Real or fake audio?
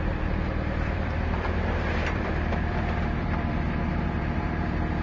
fake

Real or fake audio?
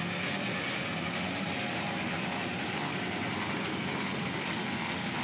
real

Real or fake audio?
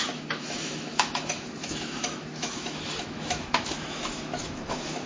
fake